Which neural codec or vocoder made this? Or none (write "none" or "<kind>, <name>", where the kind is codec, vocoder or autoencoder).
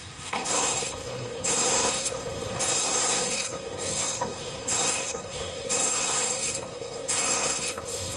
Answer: codec, SNAC